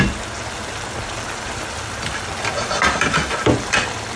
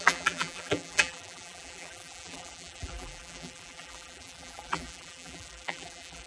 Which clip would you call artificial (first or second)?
second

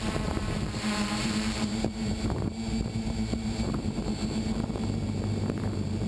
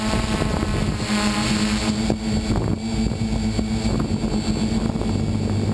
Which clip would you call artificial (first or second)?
first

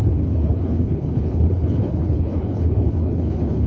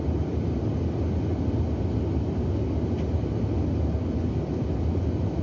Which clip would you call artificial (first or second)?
first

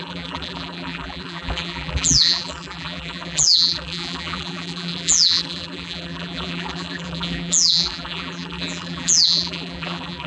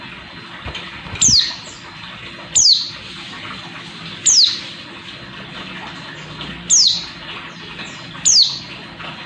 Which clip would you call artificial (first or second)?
first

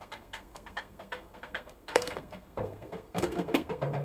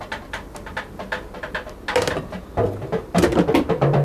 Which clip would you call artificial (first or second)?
first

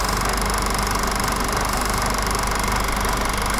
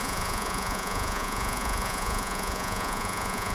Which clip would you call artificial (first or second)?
second